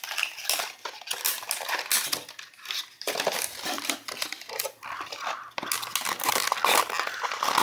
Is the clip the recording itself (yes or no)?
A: yes